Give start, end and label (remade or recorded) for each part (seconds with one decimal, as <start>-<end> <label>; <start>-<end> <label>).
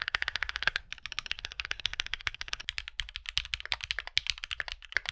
0.0-0.8 remade; 0.8-1.3 recorded; 1.3-2.6 remade; 2.6-5.1 recorded